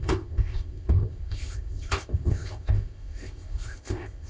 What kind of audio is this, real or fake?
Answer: fake